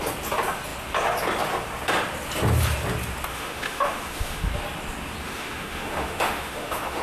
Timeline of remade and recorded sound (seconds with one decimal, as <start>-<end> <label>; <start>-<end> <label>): 0.0-3.3 recorded; 3.3-4.5 remade; 4.5-5.2 recorded; 5.2-7.0 remade